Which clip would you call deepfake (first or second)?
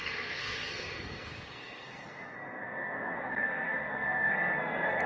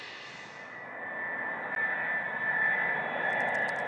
first